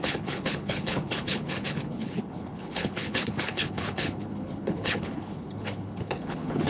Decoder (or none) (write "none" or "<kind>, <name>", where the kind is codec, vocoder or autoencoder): codec, HILCodec